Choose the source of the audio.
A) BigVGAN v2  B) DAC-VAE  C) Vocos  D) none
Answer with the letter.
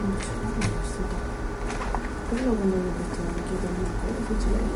D